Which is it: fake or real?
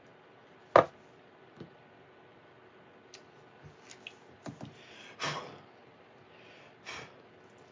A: real